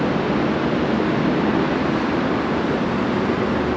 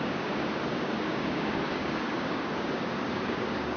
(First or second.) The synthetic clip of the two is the second